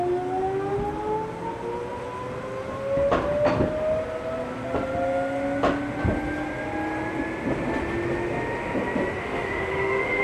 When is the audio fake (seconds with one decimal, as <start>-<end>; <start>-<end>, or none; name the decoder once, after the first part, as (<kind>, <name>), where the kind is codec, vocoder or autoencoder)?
9.2-10.2 (autoencoder, DAC-VAE)